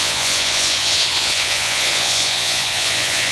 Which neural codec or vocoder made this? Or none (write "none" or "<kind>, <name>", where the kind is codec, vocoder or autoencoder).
vocoder, Vocos